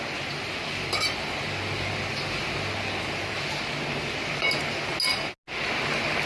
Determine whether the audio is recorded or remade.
recorded